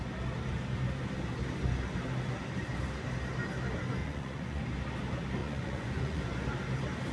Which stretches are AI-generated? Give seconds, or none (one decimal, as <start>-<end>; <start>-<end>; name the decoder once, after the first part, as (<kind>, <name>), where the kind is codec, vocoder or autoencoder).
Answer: 4.0-4.6 (vocoder, Vocos); 5.4-6.2